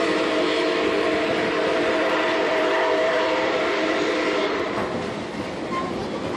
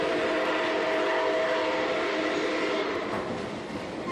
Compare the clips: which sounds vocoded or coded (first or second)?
first